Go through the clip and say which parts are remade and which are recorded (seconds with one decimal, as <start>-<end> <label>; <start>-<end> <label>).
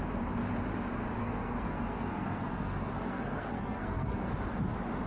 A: 0.0-1.2 recorded; 1.2-4.3 remade; 4.3-5.1 recorded